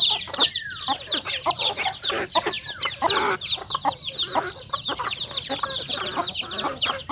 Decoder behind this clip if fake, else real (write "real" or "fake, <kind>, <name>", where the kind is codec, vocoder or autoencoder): fake, vocoder, BigVGAN v2